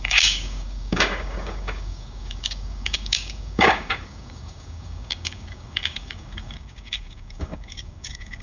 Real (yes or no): no